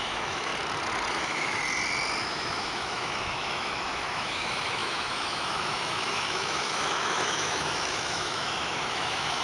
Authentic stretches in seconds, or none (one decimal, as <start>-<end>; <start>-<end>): 0.5-1.1; 1.6-2.2